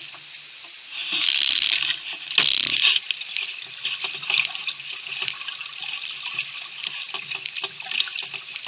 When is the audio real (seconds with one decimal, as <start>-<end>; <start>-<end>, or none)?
0.0-8.7